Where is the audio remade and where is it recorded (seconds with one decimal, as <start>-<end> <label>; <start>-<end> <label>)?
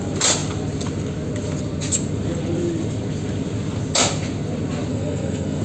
0.0-4.9 recorded; 4.9-5.6 remade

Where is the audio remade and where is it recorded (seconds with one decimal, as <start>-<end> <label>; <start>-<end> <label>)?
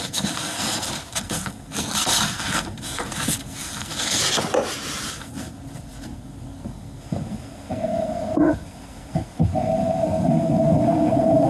0.0-4.2 remade; 4.2-5.1 recorded; 5.1-11.5 remade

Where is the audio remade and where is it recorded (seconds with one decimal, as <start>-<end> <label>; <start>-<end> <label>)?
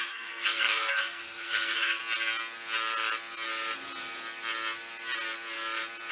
0.0-2.0 remade; 2.0-6.1 recorded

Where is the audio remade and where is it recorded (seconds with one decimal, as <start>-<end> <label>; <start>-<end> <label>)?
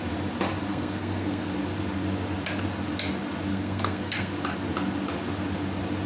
0.0-0.7 recorded; 0.7-1.5 remade; 1.5-3.5 recorded; 3.5-4.3 remade; 4.3-6.1 recorded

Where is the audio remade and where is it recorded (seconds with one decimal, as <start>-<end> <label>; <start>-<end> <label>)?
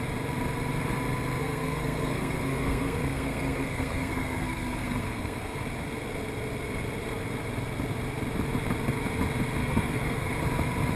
0.0-1.4 recorded; 1.4-5.6 remade; 5.6-9.6 recorded; 9.6-10.3 remade; 10.3-11.0 recorded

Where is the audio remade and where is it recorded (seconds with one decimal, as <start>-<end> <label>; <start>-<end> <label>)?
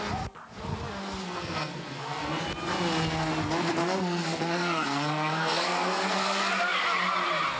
0.0-1.2 recorded; 1.2-2.4 remade; 2.4-3.8 recorded; 3.8-6.5 remade; 6.5-7.6 recorded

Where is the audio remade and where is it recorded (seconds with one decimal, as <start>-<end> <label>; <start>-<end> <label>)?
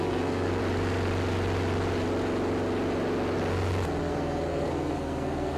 0.0-0.6 remade; 0.6-4.0 recorded; 4.0-5.6 remade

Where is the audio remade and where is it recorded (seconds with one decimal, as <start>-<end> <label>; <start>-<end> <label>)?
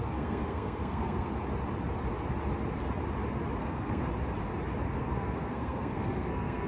0.0-1.3 remade; 1.3-3.6 recorded; 3.6-4.1 remade; 4.1-5.0 recorded; 5.0-6.7 remade